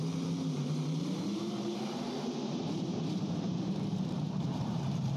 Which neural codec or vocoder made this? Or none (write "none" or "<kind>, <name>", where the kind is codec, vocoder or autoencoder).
vocoder, BigVGAN v2